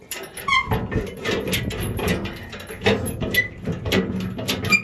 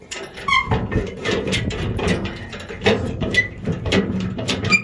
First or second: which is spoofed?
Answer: second